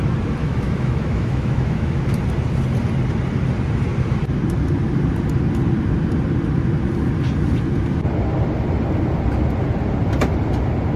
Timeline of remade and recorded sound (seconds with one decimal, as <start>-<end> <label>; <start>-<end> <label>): 0.0-0.4 recorded; 0.4-2.0 remade; 2.0-11.0 recorded